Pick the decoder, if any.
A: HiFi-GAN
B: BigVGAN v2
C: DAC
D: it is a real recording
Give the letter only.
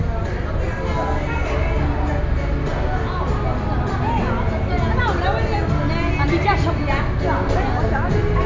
D